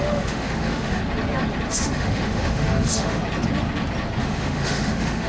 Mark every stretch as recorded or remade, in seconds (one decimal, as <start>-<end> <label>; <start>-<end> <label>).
0.0-1.0 remade; 1.0-1.7 recorded; 1.7-3.2 remade; 3.2-4.2 recorded; 4.2-5.3 remade